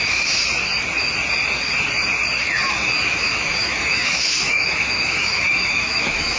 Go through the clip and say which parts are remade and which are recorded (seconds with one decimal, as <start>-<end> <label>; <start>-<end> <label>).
0.0-0.4 remade; 0.4-2.7 recorded; 2.7-6.4 remade

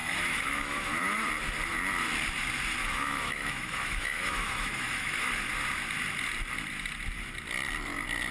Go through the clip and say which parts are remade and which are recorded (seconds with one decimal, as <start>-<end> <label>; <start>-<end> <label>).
0.0-1.3 remade; 1.3-2.8 recorded; 2.8-5.3 remade; 5.3-8.3 recorded

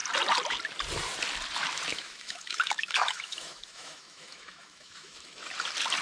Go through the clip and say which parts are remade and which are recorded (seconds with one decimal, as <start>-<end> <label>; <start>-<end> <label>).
0.0-1.9 recorded; 1.9-5.5 remade; 5.5-6.0 recorded